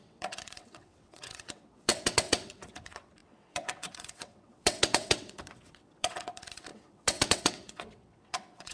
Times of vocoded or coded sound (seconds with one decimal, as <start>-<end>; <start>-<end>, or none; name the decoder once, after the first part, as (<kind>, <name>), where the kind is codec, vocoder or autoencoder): 0.0-8.7 (vocoder, WaveNeXt)